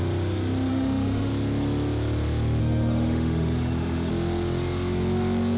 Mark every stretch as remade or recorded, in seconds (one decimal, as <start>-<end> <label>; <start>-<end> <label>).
0.0-0.7 recorded; 0.7-1.3 remade; 1.3-2.6 recorded; 2.6-4.1 remade; 4.1-5.6 recorded